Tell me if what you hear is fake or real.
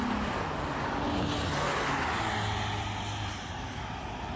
real